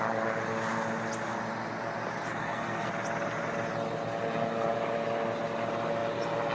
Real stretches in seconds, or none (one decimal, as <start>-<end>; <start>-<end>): 0.0-2.4; 2.9-6.5